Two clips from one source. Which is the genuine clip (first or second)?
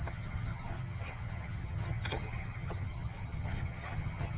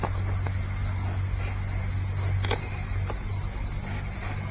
second